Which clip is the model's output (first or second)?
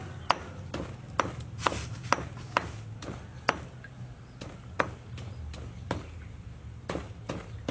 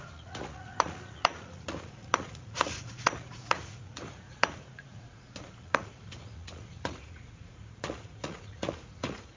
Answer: second